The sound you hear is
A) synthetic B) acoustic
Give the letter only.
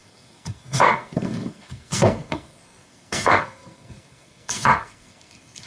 A